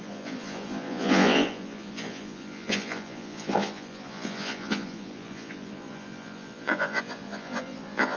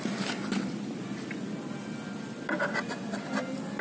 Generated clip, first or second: first